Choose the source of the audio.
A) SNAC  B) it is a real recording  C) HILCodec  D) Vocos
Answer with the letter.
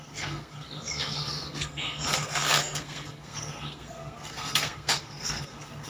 A